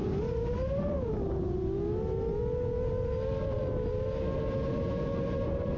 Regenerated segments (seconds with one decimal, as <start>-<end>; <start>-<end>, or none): none